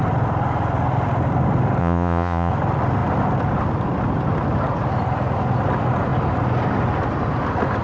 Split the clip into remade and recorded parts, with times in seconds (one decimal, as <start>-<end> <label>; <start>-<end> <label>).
0.0-1.8 recorded; 1.8-2.5 remade; 2.5-7.8 recorded